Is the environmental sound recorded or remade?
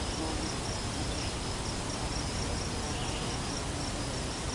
recorded